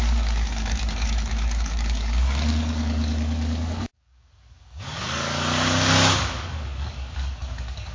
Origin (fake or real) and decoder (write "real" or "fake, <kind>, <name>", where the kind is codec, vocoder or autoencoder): fake, codec, DAC